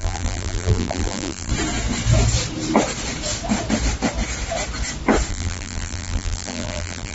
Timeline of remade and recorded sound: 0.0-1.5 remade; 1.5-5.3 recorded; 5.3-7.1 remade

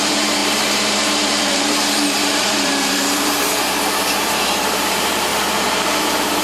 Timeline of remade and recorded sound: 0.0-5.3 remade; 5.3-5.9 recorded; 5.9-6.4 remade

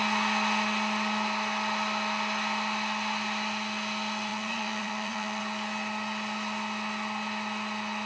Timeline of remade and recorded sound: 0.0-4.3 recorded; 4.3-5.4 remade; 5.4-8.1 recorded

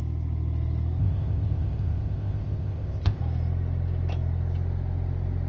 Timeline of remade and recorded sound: 0.0-1.0 recorded; 1.0-3.2 remade; 3.2-5.5 recorded